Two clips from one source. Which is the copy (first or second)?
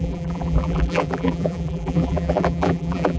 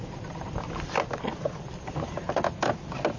first